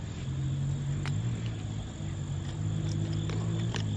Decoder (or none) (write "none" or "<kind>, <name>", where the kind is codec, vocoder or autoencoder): none